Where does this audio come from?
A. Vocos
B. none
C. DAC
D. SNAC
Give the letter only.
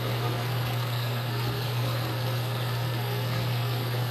D